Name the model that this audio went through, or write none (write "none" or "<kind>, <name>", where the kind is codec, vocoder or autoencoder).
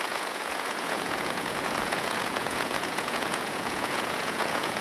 vocoder, Vocos